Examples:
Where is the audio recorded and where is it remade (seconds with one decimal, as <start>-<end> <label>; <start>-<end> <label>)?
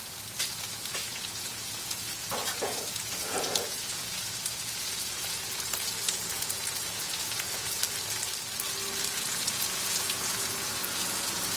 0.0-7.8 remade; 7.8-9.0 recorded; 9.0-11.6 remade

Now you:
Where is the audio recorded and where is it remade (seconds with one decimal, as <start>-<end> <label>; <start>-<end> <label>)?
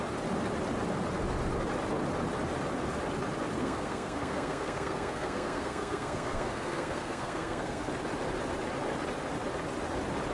0.0-3.6 recorded; 3.6-7.9 remade; 7.9-10.3 recorded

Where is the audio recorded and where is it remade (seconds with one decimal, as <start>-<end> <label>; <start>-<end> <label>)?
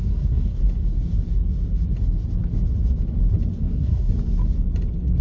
0.0-0.6 remade; 0.6-3.5 recorded; 3.5-4.1 remade; 4.1-5.2 recorded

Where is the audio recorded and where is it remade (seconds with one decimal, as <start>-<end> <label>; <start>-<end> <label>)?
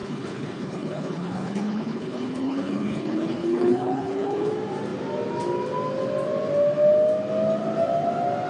0.0-4.5 remade; 4.5-8.5 recorded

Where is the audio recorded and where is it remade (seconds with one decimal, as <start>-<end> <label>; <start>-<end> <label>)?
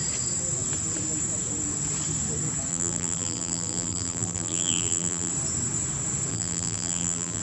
0.0-2.7 recorded; 2.7-5.3 remade; 5.3-6.3 recorded; 6.3-7.4 remade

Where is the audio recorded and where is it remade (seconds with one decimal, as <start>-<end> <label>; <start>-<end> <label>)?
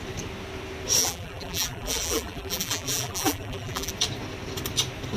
0.0-1.0 recorded; 1.0-3.9 remade; 3.9-5.2 recorded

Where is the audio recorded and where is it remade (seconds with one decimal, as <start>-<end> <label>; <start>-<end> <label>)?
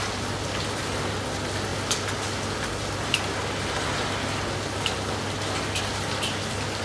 0.0-6.8 recorded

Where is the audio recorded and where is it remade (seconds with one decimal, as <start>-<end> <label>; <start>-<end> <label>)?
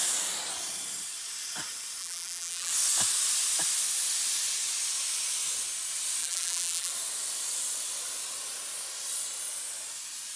0.0-2.0 recorded; 2.0-2.7 remade; 2.7-6.2 recorded; 6.2-6.9 remade; 6.9-10.4 recorded